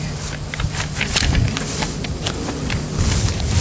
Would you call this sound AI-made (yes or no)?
no